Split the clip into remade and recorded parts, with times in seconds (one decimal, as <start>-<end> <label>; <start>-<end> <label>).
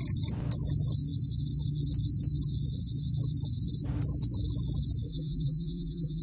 0.0-5.1 recorded; 5.1-6.2 remade